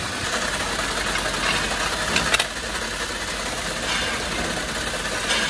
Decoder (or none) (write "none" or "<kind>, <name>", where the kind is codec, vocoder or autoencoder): none